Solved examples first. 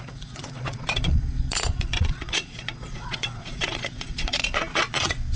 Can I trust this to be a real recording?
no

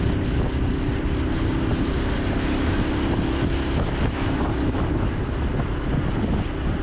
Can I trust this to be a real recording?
yes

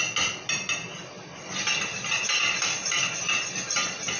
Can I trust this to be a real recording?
yes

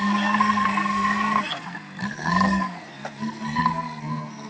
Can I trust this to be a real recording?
no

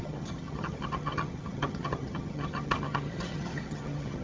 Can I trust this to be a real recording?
no